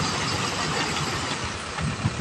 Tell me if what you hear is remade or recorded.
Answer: remade